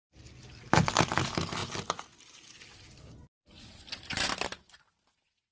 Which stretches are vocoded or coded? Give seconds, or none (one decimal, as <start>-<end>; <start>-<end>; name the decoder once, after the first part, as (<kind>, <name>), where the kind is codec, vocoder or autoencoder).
none